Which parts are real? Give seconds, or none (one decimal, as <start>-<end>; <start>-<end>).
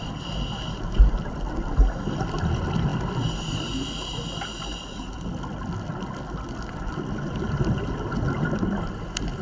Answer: 0.0-9.4